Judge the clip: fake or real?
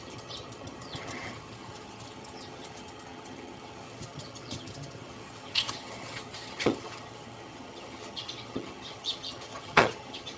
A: fake